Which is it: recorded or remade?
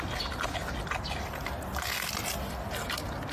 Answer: recorded